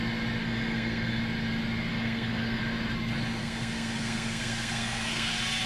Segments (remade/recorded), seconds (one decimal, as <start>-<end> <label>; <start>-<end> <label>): 0.0-0.4 recorded; 0.4-1.2 remade; 1.2-1.9 recorded; 1.9-2.6 remade; 2.6-3.4 recorded; 3.4-5.3 remade; 5.3-5.7 recorded